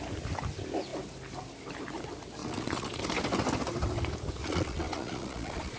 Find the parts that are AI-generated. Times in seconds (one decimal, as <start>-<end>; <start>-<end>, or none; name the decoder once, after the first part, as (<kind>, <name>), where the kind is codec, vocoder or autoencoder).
2.4-3.0 (vocoder, Vocos); 4.4-5.8